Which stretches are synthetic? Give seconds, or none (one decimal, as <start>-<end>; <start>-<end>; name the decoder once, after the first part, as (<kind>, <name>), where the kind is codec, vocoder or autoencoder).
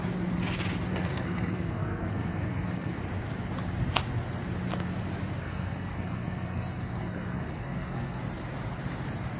0.9-2.9 (codec, SNAC); 5.4-8.2